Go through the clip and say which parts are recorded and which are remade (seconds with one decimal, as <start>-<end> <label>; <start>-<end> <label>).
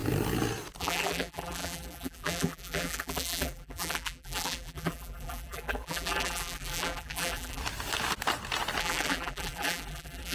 0.0-0.8 recorded; 0.8-7.6 remade; 7.6-8.8 recorded; 8.8-10.3 remade